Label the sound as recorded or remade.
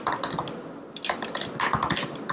recorded